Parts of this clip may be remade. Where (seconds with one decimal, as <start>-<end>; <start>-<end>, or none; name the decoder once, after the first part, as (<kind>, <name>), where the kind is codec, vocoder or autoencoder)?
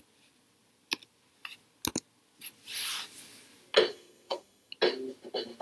3.9-4.7 (codec, SNAC)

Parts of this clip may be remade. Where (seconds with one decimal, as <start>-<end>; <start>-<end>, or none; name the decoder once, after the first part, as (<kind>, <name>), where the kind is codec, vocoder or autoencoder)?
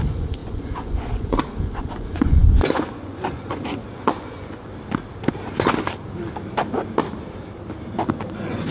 0.0-4.7 (vocoder, Vocos); 8.1-8.7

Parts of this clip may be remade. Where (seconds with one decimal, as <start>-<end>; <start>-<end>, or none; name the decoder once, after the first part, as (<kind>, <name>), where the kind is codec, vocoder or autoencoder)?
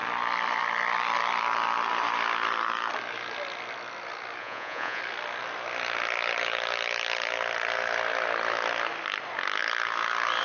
4.4-5.0 (vocoder, Vocos)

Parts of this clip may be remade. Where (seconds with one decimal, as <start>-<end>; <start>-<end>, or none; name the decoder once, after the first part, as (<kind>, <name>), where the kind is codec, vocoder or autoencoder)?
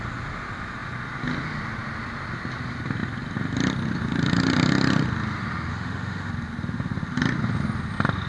5.7-6.3 (autoencoder, DAC-VAE)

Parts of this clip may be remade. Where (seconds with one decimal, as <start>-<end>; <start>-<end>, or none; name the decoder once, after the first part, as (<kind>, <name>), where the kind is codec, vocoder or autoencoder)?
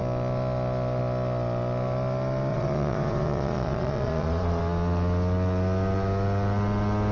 2.5-4.6 (vocoder, Vocos)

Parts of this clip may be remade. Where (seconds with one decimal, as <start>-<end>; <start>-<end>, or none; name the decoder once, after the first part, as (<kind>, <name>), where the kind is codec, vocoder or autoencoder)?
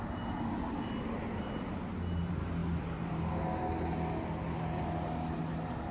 none